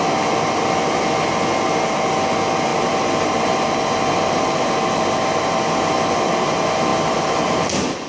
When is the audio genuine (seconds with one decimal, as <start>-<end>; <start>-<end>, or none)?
0.0-2.7; 3.3-8.1